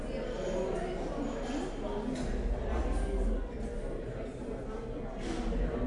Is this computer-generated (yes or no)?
no